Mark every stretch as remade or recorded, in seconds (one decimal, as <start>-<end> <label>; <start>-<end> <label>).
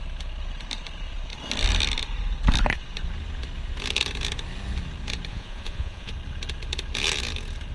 0.0-5.3 recorded; 5.3-6.1 remade; 6.1-7.7 recorded